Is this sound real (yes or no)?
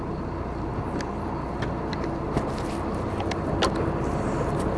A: yes